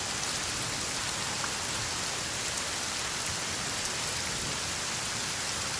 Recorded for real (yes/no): yes